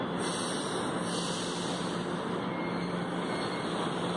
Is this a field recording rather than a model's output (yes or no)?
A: yes